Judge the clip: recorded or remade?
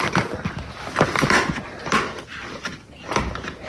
recorded